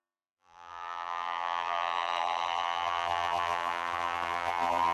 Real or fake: fake